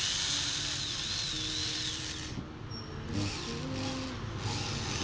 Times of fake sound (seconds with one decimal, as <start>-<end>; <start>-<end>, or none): 1.6-2.3

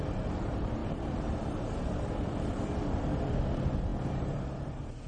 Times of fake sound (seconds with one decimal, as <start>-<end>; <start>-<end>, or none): 0.8-1.8

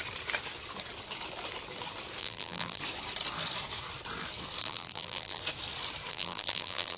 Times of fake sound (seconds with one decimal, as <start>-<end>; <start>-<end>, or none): 2.2-2.8; 4.6-5.4; 6.1-7.0

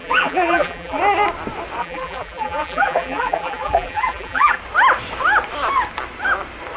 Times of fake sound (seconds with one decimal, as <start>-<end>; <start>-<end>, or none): 0.0-1.0; 1.8-4.6

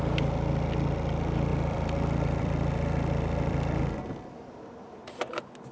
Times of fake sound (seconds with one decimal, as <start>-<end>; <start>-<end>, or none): 1.5-3.8

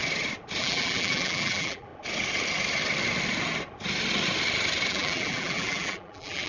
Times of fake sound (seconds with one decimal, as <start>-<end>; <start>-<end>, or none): 0.6-1.9; 4.9-6.5

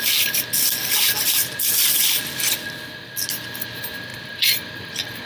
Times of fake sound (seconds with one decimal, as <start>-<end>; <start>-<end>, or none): none